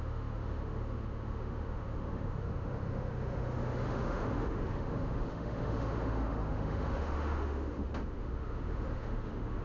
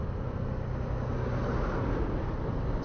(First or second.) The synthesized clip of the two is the first